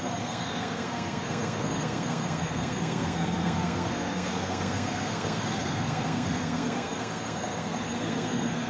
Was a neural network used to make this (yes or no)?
yes